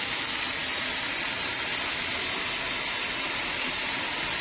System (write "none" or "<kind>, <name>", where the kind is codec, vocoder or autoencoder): none